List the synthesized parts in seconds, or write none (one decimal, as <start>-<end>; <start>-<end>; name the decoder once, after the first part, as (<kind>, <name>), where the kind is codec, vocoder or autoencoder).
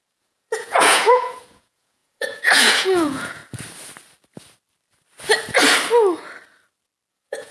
0.0-3.4 (vocoder, Vocos); 7.1-7.5